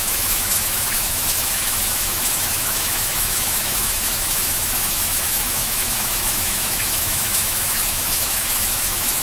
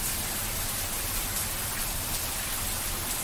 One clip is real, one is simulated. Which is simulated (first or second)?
first